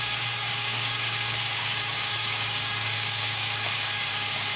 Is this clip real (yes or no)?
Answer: no